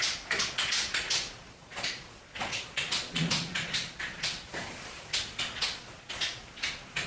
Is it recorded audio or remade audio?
remade